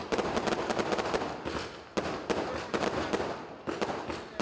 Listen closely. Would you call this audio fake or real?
real